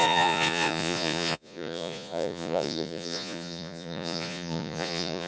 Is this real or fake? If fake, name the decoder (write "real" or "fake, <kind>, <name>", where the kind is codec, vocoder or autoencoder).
fake, vocoder, Vocos